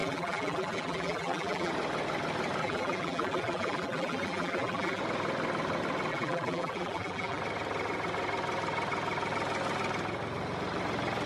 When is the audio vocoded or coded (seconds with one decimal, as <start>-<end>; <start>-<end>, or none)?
0.0-1.7; 2.6-5.0; 6.1-7.4